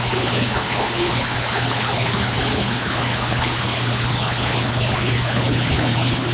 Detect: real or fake fake